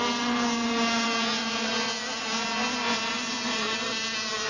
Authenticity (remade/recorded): recorded